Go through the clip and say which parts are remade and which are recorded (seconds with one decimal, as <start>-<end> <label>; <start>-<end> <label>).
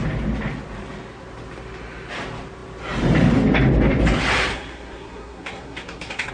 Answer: 0.0-4.5 recorded; 4.5-6.3 remade